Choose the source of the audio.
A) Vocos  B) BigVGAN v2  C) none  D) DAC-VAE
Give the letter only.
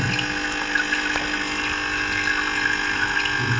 C